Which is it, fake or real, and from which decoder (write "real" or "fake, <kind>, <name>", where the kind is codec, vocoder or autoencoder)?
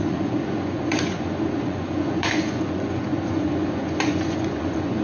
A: fake, vocoder, Vocos